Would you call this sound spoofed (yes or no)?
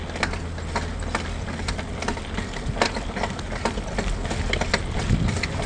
no